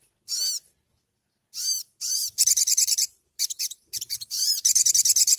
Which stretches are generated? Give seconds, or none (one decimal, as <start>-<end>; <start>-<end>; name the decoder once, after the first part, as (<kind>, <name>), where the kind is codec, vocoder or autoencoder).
1.7-4.9 (vocoder, BigVGAN v2)